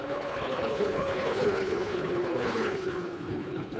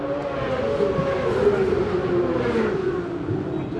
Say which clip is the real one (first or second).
second